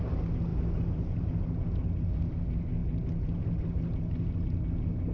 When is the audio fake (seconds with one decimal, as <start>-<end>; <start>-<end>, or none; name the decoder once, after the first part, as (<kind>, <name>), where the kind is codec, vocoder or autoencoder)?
none